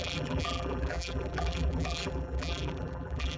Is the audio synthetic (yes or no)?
yes